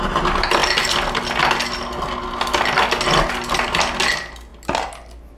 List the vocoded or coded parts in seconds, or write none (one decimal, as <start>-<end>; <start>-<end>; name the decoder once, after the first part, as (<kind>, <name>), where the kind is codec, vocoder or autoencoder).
none